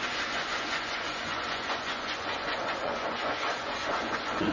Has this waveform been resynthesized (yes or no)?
yes